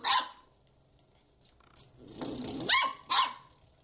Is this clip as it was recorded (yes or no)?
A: yes